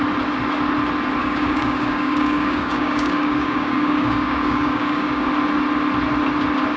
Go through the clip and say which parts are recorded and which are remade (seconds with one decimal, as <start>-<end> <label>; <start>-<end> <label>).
0.0-1.2 recorded; 1.2-5.3 remade; 5.3-6.8 recorded